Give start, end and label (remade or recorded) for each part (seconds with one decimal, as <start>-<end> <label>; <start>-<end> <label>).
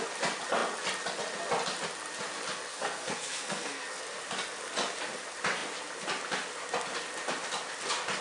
0.0-2.7 recorded; 2.7-4.0 remade; 4.0-8.2 recorded